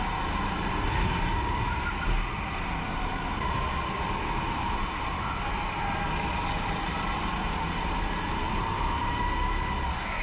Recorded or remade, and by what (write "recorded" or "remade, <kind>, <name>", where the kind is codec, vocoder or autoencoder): recorded